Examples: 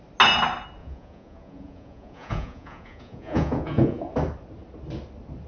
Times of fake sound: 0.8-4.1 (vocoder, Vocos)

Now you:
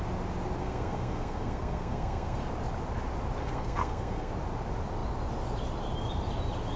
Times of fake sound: 0.6-2.5 (codec, SNAC); 3.4-4.3

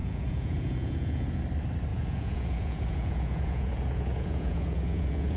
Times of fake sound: 0.0-1.4 (vocoder, Vocos); 1.9-5.4

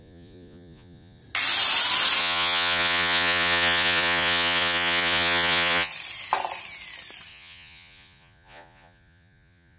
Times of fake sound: 0.0-1.2 (vocoder, Vocos); 2.2-5.9; 7.3-9.8

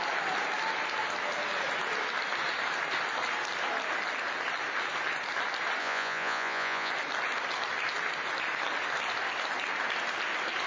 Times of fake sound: 5.8-6.9 (vocoder, Vocos)

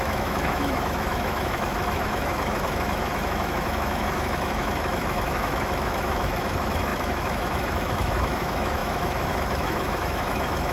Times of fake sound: 0.0-10.7 (autoencoder, DAC-VAE)

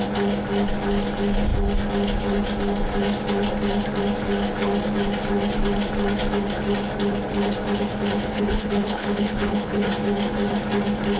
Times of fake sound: 8.3-9.9 (codec, HILCodec)

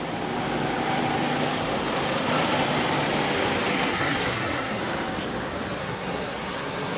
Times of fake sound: 3.7-4.8 (codec, SNAC); 5.8-7.0